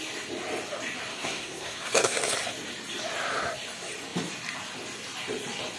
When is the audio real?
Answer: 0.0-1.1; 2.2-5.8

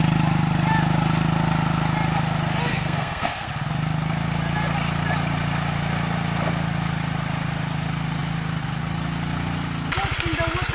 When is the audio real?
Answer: 0.0-2.7; 3.5-10.7

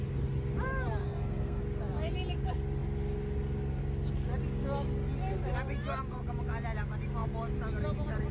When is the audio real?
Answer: 0.0-1.0; 1.6-8.3